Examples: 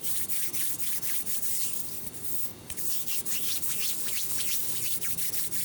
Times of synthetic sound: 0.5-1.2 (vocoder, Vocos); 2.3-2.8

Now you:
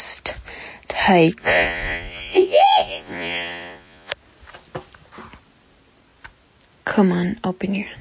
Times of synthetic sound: 1.4-4.1 (vocoder, Vocos)

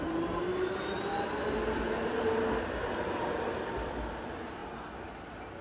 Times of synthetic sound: none

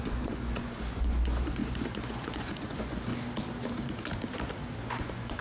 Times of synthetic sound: 0.0-3.1 (vocoder, Vocos); 4.8-5.4